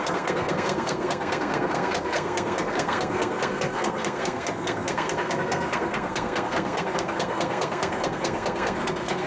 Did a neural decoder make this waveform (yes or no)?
yes